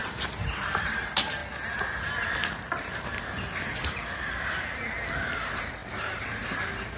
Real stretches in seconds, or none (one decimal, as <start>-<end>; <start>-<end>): 1.4-3.7